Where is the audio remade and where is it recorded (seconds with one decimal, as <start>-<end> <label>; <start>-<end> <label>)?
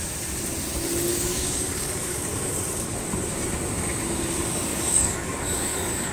0.0-1.1 recorded; 1.1-2.5 remade; 2.5-4.7 recorded; 4.7-6.1 remade